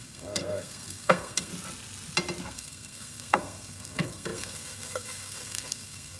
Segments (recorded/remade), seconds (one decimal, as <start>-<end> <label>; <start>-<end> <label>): 0.0-1.5 remade; 1.5-2.4 recorded; 2.4-6.2 remade